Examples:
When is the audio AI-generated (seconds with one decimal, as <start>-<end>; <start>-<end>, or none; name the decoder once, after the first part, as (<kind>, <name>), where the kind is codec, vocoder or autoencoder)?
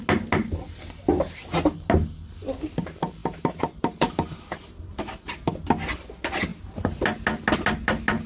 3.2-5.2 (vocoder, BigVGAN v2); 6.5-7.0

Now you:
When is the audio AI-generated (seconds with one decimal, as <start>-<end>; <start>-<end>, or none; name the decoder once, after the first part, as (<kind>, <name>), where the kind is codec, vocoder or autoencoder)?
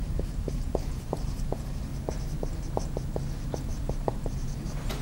0.0-1.9 (vocoder, BigVGAN v2); 3.7-5.0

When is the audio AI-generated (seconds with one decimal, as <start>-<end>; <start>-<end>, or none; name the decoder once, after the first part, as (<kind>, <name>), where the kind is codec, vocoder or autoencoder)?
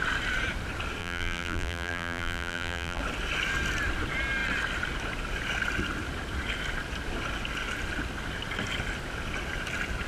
1.0-3.0 (vocoder, BigVGAN v2)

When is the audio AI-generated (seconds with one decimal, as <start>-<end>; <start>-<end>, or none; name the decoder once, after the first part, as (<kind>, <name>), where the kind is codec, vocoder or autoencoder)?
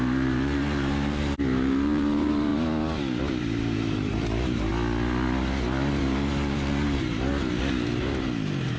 0.0-2.5 (vocoder, BigVGAN v2); 3.4-4.7; 6.0-7.3